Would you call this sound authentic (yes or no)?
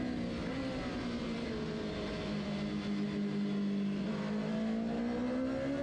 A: yes